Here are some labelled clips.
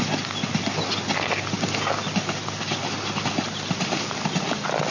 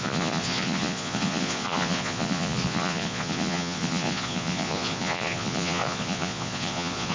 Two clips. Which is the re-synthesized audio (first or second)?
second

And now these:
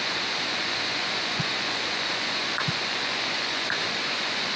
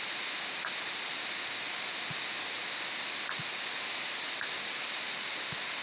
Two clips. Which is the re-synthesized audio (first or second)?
first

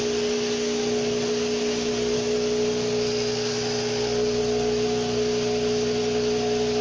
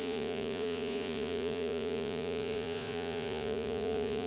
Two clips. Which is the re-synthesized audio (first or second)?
second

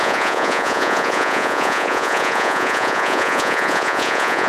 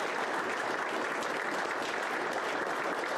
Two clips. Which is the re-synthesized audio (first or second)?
first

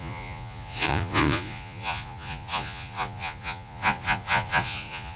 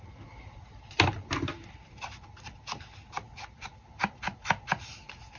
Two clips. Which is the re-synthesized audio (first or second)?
first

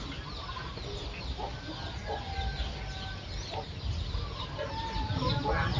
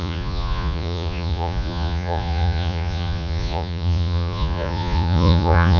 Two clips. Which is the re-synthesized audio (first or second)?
second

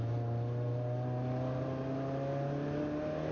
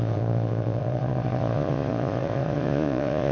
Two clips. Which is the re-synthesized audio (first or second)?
second